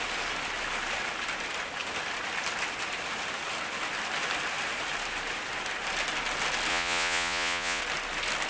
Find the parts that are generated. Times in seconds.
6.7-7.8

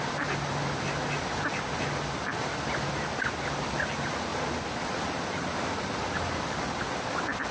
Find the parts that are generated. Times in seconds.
none

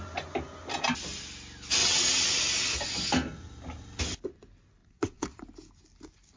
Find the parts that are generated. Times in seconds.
1.8-2.4; 4.8-5.4

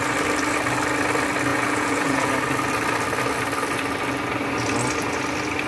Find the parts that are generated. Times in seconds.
1.5-2.3

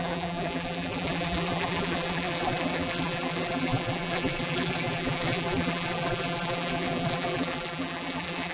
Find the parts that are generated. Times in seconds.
0.0-8.5

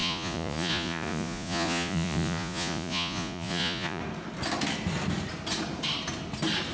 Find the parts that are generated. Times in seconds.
0.0-4.0